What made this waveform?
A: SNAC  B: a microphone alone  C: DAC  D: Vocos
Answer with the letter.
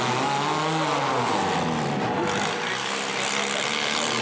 B